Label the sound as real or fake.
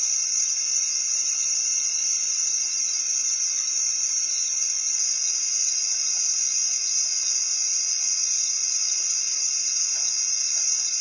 real